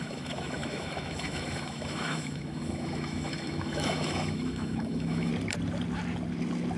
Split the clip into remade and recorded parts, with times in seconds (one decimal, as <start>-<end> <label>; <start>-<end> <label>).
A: 0.0-5.3 remade; 5.3-6.8 recorded